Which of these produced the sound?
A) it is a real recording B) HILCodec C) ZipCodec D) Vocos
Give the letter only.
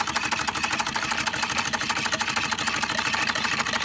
A